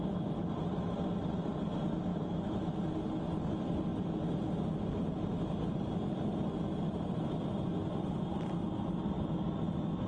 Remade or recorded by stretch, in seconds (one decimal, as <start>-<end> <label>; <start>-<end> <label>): 0.0-2.1 recorded; 2.1-2.8 remade; 2.8-10.1 recorded